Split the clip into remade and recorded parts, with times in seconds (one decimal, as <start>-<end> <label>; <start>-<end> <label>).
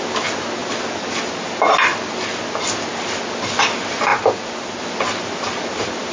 0.0-6.1 recorded